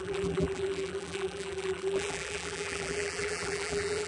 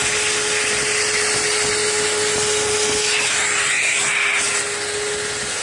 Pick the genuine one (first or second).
second